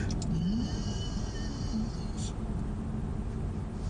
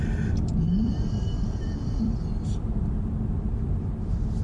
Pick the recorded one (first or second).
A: first